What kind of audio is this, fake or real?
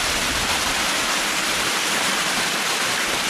real